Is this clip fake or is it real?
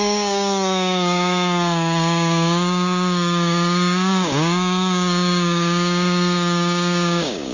fake